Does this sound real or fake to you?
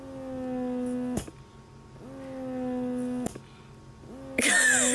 real